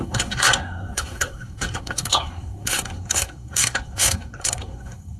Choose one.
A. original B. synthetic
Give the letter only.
B